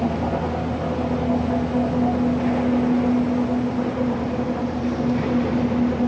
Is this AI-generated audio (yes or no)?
no